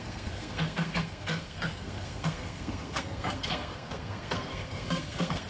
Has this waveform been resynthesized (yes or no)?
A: yes